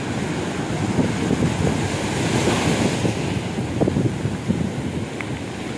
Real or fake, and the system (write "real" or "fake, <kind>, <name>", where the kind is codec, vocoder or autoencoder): real